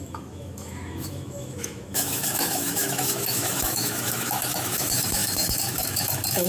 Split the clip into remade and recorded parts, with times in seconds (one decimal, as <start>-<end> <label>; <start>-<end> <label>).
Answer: 0.0-6.5 remade